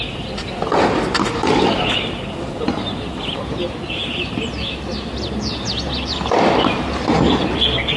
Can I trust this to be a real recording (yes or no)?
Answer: yes